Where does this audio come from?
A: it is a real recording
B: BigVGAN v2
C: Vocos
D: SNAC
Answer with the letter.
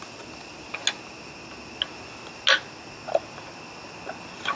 A